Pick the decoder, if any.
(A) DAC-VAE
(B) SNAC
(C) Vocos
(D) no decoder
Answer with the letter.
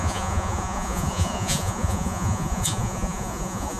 C